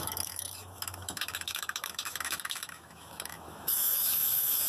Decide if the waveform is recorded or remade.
remade